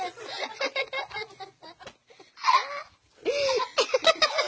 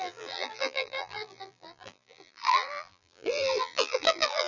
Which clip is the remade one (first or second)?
second